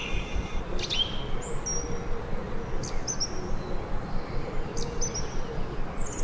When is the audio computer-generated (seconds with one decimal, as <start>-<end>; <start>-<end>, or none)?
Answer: 0.0-0.6